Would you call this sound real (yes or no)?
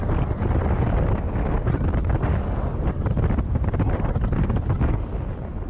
yes